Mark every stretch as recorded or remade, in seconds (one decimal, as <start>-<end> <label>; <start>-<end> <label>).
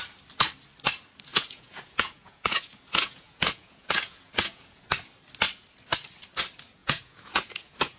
0.0-1.3 recorded; 1.3-4.9 remade; 4.9-6.8 recorded; 6.8-8.0 remade